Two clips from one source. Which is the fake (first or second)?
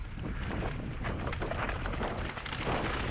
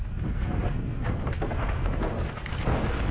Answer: second